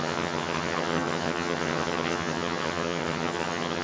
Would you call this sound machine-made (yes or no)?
yes